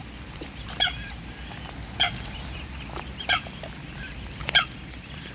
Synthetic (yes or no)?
no